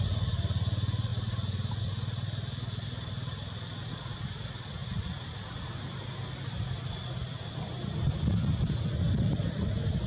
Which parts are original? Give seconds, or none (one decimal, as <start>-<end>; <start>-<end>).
0.0-10.1